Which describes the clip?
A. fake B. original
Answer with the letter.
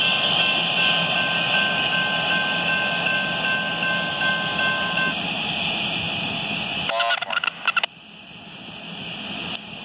B